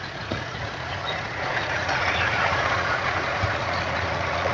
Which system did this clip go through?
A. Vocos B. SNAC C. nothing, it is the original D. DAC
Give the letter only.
A